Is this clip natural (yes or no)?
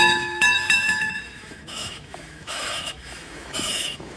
no